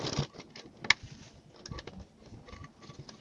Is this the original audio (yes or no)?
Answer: yes